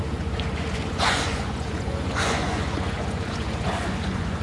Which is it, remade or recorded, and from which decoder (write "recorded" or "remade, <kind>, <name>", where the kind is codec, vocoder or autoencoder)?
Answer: remade, vocoder, Vocos